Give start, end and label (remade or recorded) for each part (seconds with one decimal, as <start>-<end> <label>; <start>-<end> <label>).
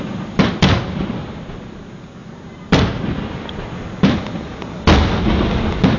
0.0-6.0 recorded